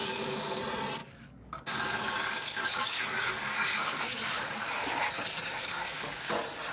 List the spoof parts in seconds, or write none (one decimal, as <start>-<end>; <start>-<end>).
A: 0.0-0.6; 1.0-5.0; 5.6-6.3